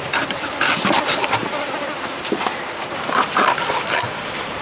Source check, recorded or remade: remade